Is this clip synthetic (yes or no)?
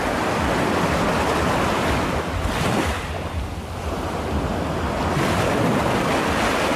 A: no